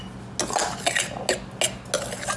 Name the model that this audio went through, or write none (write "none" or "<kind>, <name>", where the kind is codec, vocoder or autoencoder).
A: none